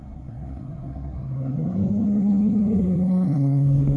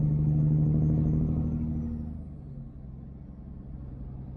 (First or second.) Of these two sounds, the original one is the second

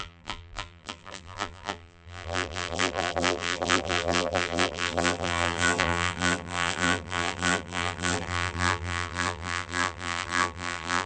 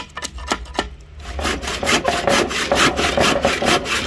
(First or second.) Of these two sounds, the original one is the second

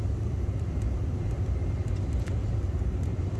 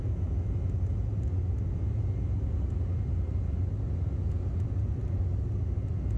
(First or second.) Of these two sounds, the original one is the second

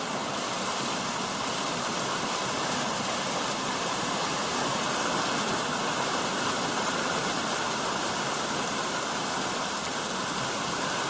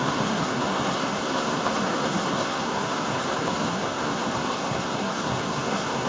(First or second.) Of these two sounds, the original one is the first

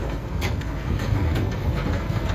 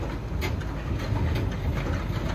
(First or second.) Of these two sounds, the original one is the second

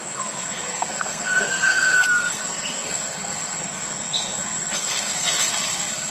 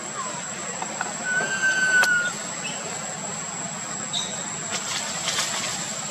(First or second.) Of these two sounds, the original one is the second